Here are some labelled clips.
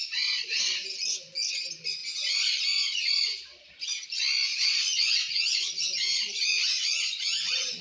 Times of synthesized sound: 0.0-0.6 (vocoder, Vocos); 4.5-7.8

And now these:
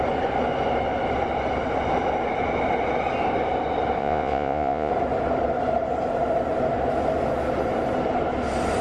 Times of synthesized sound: 4.0-4.9 (vocoder, Vocos)